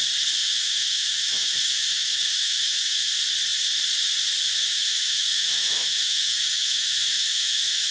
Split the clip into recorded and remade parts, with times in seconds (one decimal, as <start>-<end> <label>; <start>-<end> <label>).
0.0-0.4 recorded; 0.4-3.1 remade; 3.1-4.7 recorded; 4.7-7.9 remade